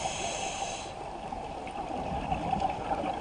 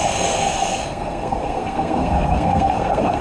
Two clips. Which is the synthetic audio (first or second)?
second